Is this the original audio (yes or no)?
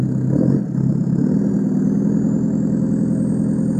yes